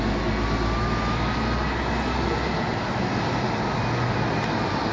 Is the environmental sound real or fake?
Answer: real